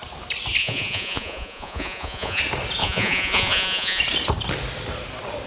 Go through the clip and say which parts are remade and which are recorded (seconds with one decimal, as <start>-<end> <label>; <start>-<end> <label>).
0.0-0.6 recorded; 0.6-2.4 remade; 2.4-2.8 recorded; 2.8-4.0 remade; 4.0-5.5 recorded